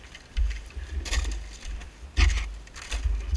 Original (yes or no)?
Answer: yes